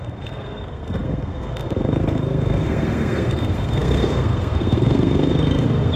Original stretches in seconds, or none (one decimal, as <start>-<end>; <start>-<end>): none